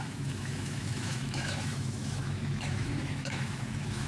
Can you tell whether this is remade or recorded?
remade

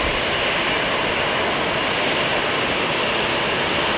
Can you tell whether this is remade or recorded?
recorded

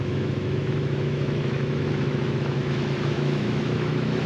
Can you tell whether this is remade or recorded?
remade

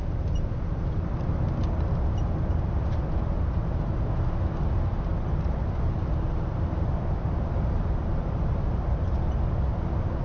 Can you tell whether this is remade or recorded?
recorded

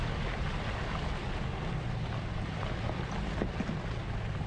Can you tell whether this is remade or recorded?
recorded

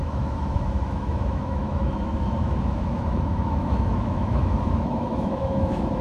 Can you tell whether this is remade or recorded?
remade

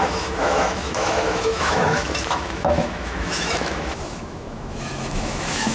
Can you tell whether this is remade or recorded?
remade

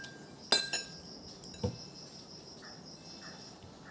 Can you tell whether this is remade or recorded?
recorded